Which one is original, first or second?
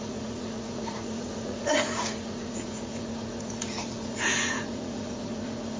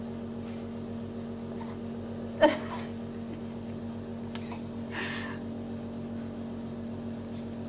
second